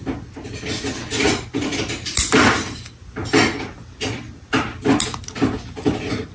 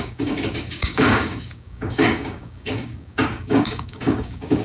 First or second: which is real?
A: first